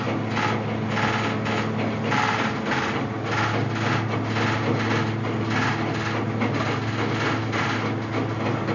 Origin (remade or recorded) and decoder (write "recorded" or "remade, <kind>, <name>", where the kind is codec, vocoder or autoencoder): recorded